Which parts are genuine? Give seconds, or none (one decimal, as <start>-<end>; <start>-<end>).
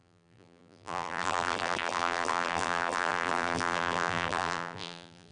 none